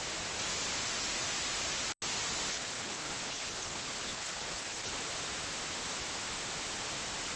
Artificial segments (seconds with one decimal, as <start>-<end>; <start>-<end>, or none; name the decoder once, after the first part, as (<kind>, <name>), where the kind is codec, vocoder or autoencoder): 2.5-4.9 (codec, HILCodec)

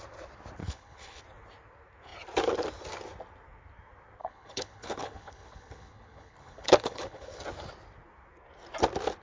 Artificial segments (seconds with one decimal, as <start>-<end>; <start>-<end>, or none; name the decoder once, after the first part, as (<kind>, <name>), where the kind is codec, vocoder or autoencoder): 0.6-1.2 (codec, HILCodec); 4.2-7.4

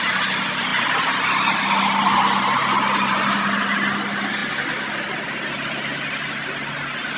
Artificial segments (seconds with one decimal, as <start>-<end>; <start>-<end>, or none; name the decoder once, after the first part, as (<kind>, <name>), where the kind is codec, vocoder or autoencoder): none